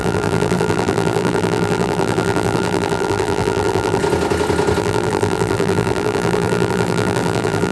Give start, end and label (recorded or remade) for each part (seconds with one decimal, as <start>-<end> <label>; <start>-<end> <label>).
0.0-4.0 remade; 4.0-4.8 recorded; 4.8-7.7 remade